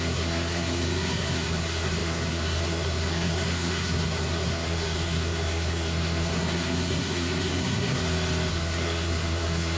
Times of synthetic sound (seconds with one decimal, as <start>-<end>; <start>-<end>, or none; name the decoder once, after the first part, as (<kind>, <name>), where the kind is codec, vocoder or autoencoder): 0.0-8.0 (codec, SNAC); 8.5-9.8